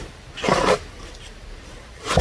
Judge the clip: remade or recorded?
remade